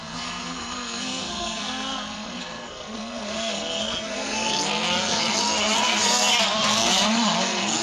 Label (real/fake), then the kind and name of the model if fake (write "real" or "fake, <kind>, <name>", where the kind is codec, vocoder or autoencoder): fake, codec, SNAC